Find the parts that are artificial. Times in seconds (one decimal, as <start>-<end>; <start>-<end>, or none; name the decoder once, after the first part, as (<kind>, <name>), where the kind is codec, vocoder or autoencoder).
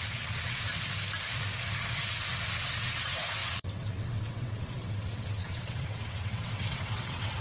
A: 0.0-0.7 (vocoder, WaveNeXt); 1.8-7.4